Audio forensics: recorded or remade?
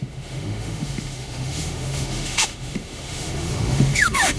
remade